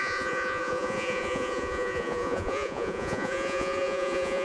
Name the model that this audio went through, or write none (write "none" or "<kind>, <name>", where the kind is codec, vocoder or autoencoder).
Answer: vocoder, Vocos